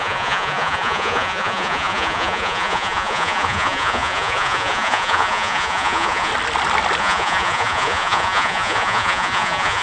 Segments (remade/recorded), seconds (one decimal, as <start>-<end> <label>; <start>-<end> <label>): 0.0-6.3 remade; 6.3-7.0 recorded; 7.0-9.8 remade